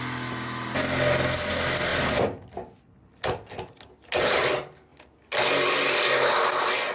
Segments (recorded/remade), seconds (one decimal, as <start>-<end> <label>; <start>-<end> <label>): 0.0-6.9 recorded